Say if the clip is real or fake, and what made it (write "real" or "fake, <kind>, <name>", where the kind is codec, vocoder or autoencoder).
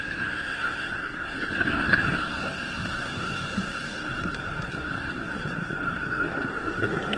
fake, codec, SNAC